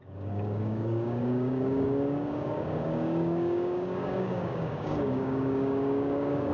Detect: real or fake fake